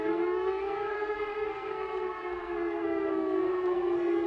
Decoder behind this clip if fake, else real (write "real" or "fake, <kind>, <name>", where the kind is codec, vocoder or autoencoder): fake, codec, SNAC